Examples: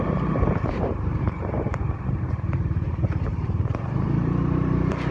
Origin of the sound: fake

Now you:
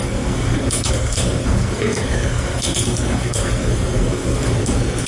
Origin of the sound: fake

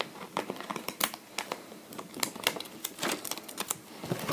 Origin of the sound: real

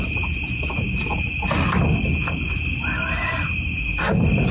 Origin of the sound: real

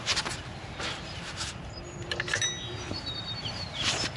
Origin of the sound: fake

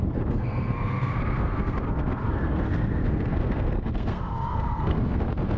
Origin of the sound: fake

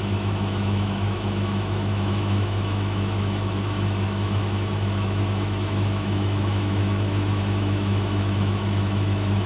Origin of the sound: fake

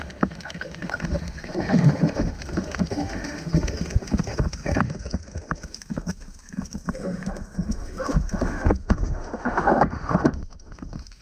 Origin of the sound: fake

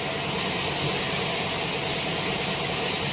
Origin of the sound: real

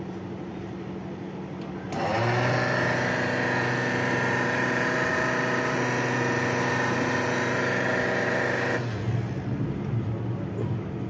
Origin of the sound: real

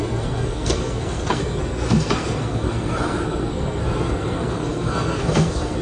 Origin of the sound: fake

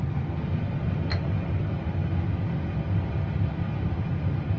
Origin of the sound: real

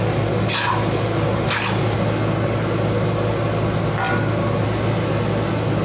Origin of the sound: real